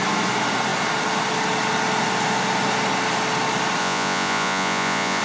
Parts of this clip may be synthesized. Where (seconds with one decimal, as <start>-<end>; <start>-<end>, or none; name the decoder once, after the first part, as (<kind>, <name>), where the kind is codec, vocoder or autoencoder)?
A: 3.8-5.2 (vocoder, Vocos)